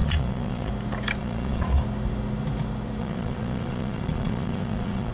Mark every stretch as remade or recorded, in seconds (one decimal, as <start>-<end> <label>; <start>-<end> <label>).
0.0-0.7 remade; 0.7-1.2 recorded; 1.2-1.8 remade; 1.8-3.0 recorded; 3.0-5.1 remade